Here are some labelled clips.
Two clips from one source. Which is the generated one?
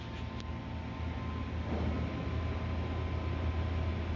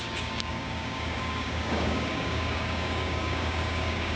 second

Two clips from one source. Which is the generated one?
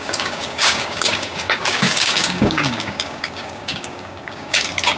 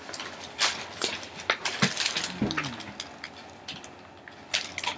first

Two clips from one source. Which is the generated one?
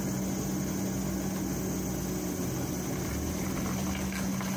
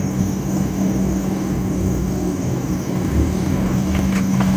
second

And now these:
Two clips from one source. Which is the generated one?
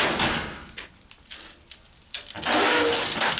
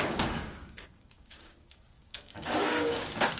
second